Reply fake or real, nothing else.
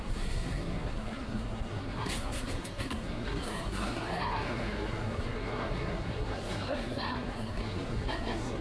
fake